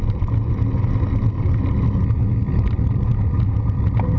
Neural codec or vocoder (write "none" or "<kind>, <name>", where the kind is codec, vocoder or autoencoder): none